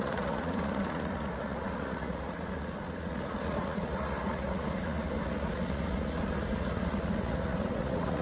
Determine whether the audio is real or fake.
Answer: fake